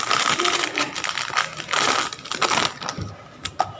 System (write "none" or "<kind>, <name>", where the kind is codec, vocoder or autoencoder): none